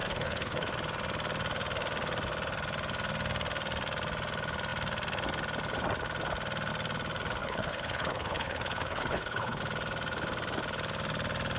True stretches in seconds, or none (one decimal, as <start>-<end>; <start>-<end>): 0.7-7.4; 9.6-11.6